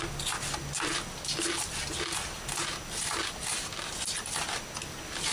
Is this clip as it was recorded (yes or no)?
yes